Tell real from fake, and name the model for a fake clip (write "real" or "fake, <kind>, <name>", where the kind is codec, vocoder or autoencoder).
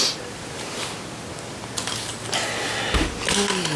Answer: real